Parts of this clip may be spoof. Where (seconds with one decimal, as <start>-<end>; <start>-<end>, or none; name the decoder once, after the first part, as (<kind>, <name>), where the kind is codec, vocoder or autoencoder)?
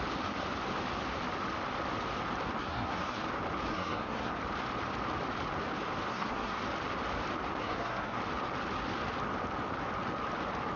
2.6-3.2 (codec, SNAC); 3.7-4.3; 6.1-6.6; 7.6-8.2